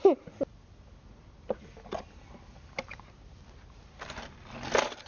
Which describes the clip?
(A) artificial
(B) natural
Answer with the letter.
B